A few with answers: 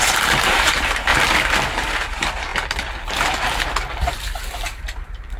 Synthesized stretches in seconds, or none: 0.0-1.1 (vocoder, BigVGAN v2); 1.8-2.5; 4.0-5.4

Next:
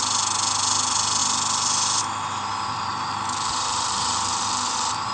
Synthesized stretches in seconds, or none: 2.9-5.1 (vocoder, BigVGAN v2)